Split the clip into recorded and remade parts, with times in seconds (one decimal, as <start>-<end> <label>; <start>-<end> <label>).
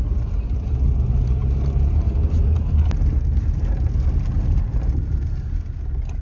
0.0-6.2 recorded